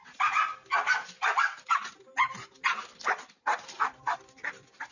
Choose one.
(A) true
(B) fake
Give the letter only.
A